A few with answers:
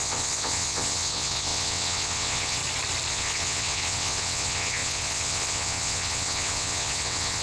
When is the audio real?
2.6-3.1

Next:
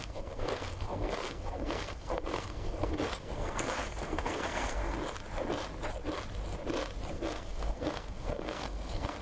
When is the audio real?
5.0-7.1

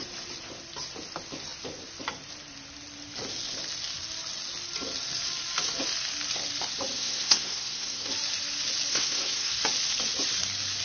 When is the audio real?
0.0-6.9; 8.1-8.9; 9.6-10.8

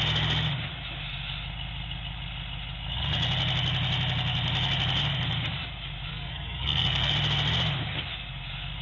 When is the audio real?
0.0-6.1; 7.1-8.8

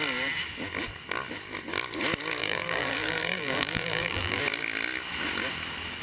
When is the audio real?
0.0-2.4; 4.4-6.0

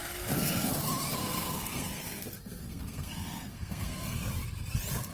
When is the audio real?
0.7-1.2; 4.3-5.1